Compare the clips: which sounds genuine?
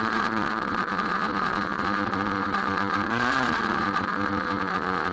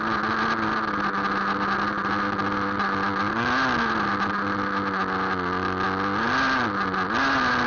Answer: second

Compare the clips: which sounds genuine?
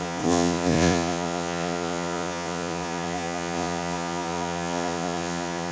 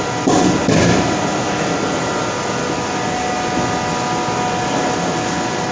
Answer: second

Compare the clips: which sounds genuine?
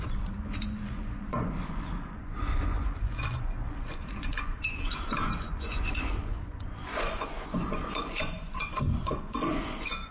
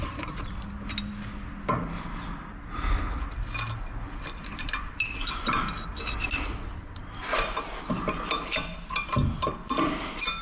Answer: second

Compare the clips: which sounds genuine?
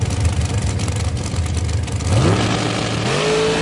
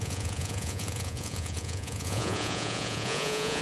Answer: first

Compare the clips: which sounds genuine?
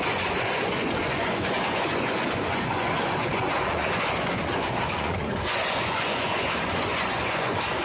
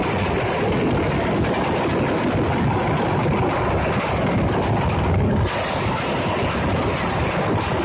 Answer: second